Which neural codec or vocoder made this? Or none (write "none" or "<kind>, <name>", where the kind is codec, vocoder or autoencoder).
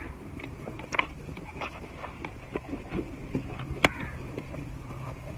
vocoder, BigVGAN v2